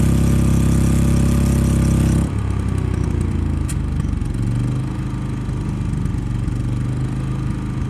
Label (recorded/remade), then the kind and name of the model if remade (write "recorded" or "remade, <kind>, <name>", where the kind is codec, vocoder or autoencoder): recorded